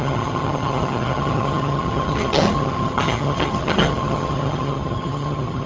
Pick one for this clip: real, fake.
fake